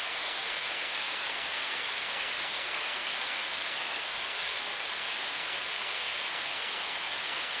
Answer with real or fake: fake